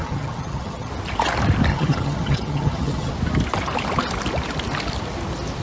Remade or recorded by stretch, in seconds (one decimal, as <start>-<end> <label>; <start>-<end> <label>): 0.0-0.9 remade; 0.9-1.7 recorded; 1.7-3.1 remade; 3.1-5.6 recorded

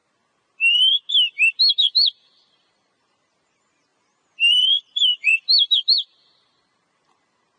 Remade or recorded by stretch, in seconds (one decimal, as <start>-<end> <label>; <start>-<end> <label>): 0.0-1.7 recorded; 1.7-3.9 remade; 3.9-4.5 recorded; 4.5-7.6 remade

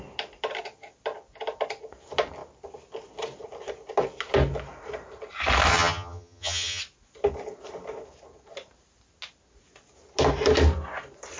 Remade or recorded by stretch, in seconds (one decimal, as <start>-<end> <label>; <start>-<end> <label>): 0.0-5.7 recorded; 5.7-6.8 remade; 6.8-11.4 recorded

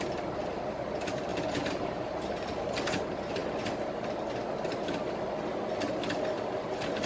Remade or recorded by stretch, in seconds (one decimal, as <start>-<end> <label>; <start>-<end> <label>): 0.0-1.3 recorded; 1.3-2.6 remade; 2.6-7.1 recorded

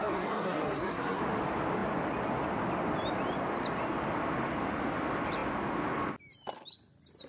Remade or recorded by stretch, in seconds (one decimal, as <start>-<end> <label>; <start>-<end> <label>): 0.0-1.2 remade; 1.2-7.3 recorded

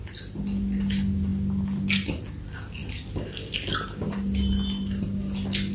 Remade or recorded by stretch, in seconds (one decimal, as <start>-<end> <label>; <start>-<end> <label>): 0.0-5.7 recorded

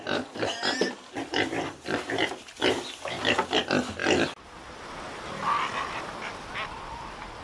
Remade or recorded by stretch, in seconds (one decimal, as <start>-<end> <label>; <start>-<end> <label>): 0.0-7.4 recorded

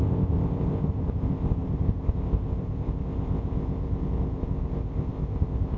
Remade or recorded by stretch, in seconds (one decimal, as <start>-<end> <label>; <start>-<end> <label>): 0.0-5.8 remade